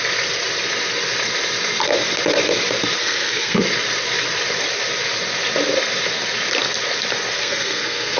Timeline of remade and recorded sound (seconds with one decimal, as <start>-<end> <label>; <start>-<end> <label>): 0.0-3.0 recorded; 3.0-3.6 remade; 3.6-7.4 recorded; 7.4-8.2 remade